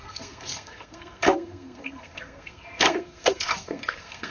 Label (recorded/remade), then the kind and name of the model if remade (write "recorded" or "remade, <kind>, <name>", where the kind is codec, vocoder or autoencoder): remade, codec, SNAC